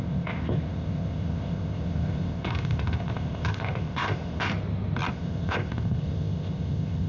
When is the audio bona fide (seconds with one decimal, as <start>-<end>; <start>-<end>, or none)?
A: 4.5-5.1

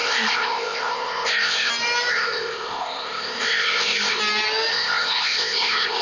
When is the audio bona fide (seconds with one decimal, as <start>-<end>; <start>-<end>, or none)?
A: 1.7-2.1; 4.2-4.7

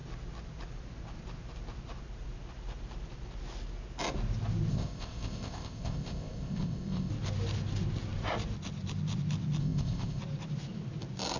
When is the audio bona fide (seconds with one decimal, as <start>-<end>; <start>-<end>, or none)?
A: 0.0-4.7; 7.1-9.6; 10.2-11.4

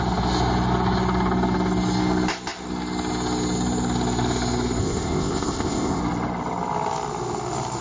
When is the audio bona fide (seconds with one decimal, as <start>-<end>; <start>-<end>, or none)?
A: 0.0-4.8; 6.0-7.8

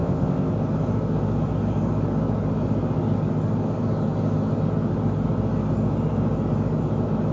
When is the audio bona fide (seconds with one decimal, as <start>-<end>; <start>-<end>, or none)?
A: 0.5-7.3

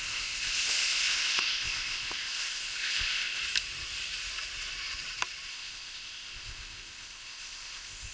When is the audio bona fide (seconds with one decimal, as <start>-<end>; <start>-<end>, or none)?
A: 3.4-5.5

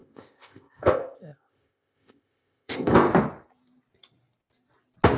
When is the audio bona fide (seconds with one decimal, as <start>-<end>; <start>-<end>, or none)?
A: 3.1-5.2